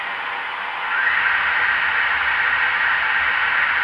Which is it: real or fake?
real